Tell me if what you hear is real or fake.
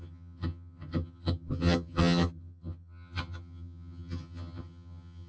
fake